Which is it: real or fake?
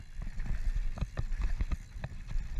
real